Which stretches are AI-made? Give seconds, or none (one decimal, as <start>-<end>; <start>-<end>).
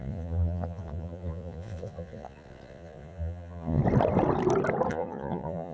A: 0.0-3.8; 4.9-5.7